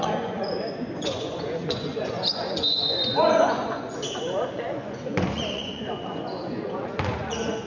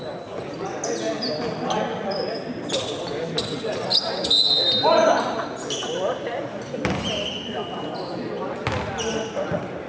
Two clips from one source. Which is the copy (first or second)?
first